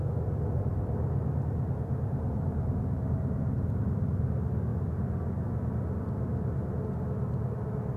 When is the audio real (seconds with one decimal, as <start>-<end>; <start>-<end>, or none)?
0.0-0.7; 4.2-4.7; 5.4-8.0